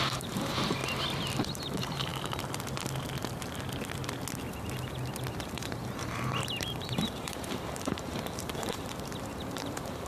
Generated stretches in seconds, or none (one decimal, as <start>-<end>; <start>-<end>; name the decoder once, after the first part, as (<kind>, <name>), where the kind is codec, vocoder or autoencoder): 0.0-0.8 (vocoder, BigVGAN v2); 1.4-2.1; 5.3-10.1